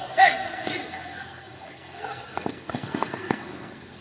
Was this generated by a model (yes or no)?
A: yes